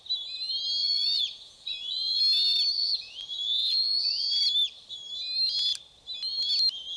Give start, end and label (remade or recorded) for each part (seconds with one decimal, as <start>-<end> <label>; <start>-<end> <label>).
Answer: 0.0-0.8 recorded; 0.8-2.2 remade; 2.2-2.8 recorded; 2.8-4.1 remade; 4.1-7.0 recorded